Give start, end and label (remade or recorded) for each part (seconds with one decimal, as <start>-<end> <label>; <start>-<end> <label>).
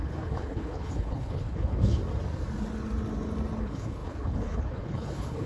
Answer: 0.0-2.0 remade; 2.0-3.6 recorded; 3.6-5.5 remade